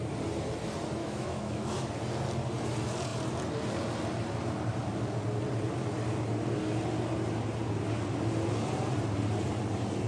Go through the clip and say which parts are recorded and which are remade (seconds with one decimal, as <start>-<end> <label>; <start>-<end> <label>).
0.0-1.0 recorded; 1.0-1.9 remade; 1.9-10.1 recorded